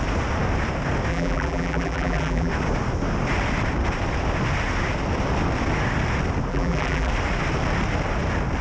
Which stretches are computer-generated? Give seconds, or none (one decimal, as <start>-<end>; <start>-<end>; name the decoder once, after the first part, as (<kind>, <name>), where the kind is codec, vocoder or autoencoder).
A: 1.1-2.5 (vocoder, BigVGAN v2); 6.5-7.1